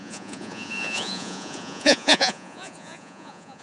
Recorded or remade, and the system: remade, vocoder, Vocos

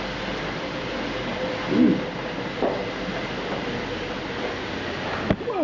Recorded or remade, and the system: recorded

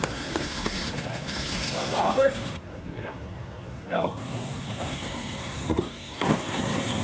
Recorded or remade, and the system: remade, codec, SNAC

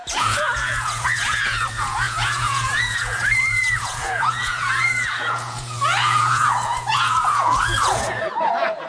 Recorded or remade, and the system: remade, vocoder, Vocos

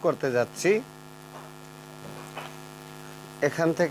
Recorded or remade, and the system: recorded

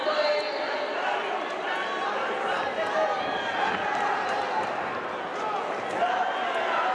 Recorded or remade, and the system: recorded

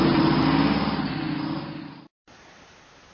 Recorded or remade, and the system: recorded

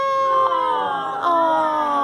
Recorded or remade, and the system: recorded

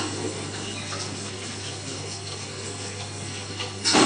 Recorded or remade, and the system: remade, codec, SNAC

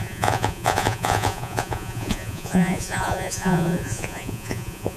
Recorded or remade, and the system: remade, vocoder, Vocos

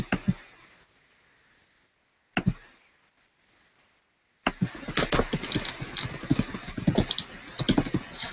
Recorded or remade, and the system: recorded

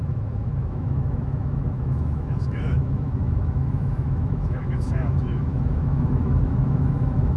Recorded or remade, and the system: remade, autoencoder, DAC-VAE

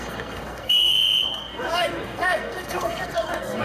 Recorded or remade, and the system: remade, codec, SNAC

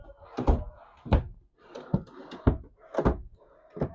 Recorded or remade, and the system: recorded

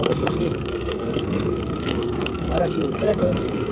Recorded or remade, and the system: remade, codec, SNAC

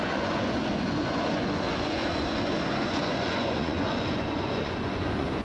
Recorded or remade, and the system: remade, vocoder, Vocos